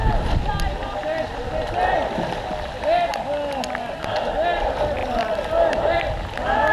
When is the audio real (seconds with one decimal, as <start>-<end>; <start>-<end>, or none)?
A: 0.0-5.0; 5.5-6.7

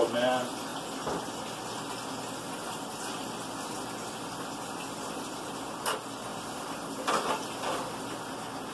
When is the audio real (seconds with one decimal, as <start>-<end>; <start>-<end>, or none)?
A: 0.0-8.7

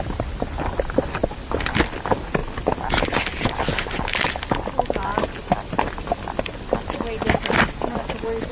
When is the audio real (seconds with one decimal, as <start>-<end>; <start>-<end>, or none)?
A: 0.0-8.5

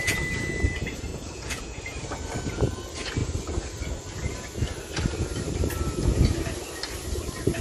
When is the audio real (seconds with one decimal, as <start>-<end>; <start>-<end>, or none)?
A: 0.0-1.1; 1.8-7.6

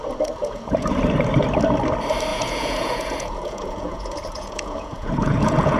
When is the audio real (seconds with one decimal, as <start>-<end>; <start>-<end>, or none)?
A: 0.0-0.4; 1.0-2.3